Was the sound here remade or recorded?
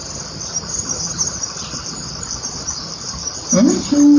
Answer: recorded